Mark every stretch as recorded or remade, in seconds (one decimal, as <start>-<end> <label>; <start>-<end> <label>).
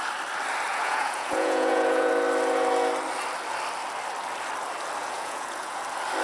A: 0.0-0.7 recorded; 0.7-2.1 remade; 2.1-5.0 recorded; 5.0-5.8 remade; 5.8-6.2 recorded